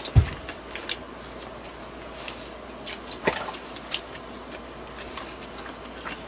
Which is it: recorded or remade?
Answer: recorded